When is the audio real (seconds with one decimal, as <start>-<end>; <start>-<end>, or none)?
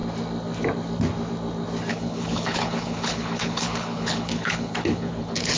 0.0-1.9